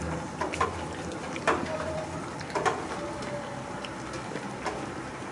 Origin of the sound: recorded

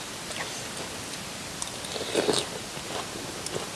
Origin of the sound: recorded